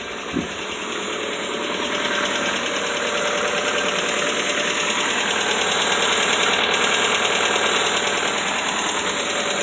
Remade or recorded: recorded